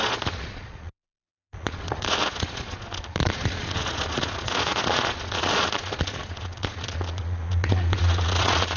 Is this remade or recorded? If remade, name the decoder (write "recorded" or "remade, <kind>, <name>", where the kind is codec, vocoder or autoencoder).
remade, vocoder, Vocos